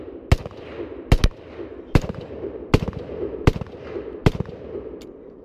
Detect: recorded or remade recorded